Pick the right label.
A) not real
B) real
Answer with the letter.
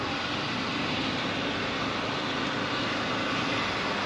B